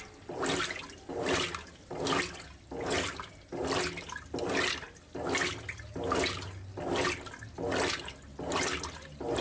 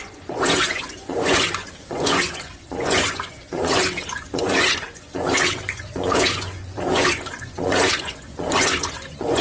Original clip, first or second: first